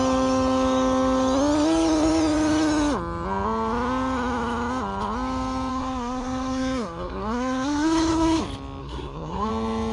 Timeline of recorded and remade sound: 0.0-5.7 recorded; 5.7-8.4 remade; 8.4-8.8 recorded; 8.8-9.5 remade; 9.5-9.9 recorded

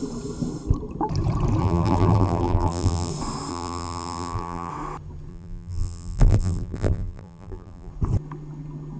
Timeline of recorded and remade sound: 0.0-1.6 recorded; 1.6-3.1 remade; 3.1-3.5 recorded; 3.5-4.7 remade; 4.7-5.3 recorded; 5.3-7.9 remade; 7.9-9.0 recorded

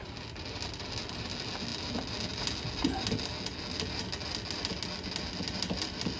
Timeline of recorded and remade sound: 0.0-6.2 recorded

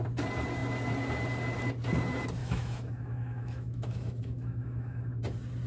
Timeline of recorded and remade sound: 0.0-2.4 recorded; 2.4-5.2 remade; 5.2-5.7 recorded